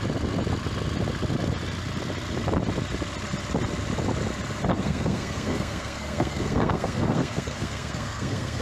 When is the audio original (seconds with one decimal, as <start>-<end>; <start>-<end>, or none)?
0.0-4.7